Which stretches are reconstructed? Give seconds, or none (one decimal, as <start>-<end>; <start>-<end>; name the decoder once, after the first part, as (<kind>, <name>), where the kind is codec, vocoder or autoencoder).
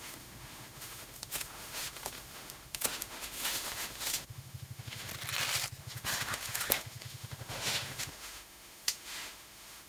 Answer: 0.0-5.1 (autoencoder, DAC-VAE); 5.8-9.9